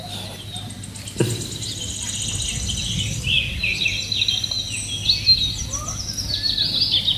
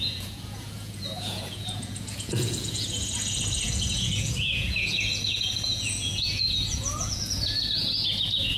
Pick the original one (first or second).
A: first